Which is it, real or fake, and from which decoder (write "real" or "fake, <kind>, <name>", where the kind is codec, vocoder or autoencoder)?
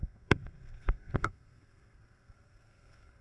fake, codec, SNAC